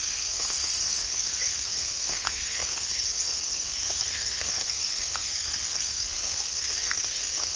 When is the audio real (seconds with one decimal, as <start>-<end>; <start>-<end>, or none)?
none